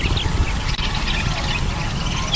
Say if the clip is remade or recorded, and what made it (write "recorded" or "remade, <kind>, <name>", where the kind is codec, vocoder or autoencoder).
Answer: recorded